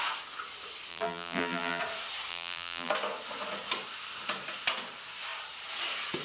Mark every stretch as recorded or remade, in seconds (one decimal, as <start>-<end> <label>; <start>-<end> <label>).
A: 0.0-0.9 recorded; 0.9-1.8 remade; 1.8-2.3 recorded; 2.3-2.9 remade; 2.9-6.2 recorded